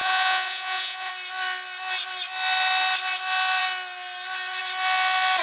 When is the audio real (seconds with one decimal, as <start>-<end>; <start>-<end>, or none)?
1.1-5.4